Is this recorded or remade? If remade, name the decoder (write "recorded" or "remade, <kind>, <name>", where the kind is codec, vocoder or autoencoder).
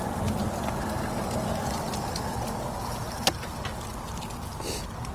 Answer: recorded